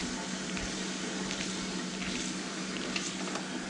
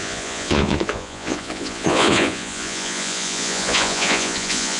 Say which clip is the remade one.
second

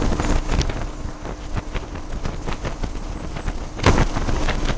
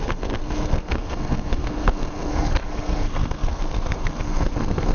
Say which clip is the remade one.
second